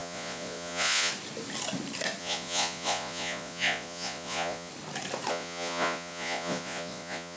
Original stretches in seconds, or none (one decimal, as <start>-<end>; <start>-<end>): 1.1-2.2; 4.7-5.3